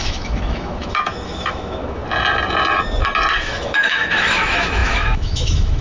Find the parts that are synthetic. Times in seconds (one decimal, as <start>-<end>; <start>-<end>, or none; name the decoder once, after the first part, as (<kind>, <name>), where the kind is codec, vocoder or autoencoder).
0.0-2.0 (autoencoder, DAC-VAE); 3.4-5.8

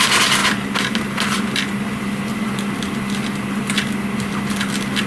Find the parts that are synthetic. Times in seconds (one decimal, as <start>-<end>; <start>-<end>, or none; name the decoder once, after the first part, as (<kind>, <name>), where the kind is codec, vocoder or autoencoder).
none

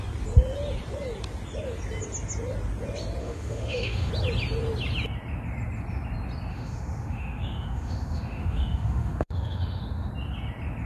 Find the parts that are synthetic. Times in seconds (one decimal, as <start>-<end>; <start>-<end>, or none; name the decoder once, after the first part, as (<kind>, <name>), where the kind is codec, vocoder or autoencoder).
3.2-4.1 (autoencoder, DAC-VAE); 6.5-10.1

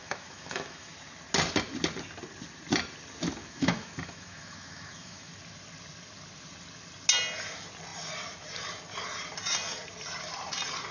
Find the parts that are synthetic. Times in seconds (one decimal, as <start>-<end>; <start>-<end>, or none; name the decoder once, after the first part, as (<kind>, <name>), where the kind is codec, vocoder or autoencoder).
0.0-0.9 (autoencoder, DAC-VAE); 3.4-5.3

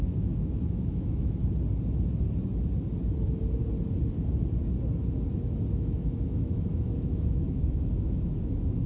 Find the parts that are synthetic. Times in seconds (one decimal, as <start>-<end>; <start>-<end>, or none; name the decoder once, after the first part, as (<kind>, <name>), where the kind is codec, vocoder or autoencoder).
0.0-1.4 (autoencoder, DAC-VAE); 5.7-8.9

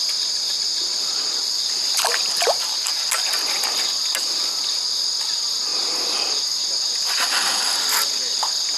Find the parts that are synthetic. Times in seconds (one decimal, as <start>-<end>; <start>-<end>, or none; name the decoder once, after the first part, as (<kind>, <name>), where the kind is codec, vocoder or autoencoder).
none

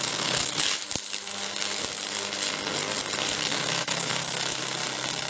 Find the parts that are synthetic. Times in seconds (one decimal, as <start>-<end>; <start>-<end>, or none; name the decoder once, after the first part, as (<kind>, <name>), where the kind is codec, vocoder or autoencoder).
0.4-1.8 (autoencoder, DAC-VAE); 3.5-4.6